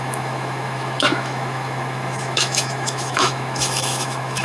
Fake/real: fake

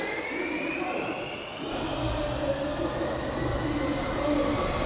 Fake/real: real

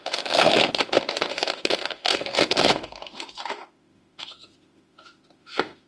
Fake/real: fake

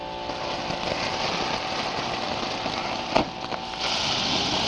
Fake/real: real